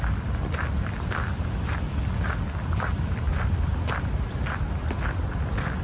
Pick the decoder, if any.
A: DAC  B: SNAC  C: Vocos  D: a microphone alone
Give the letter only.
D